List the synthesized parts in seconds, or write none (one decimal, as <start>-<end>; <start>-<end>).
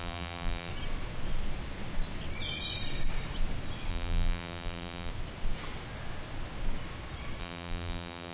0.0-0.7; 3.9-5.1; 7.4-8.3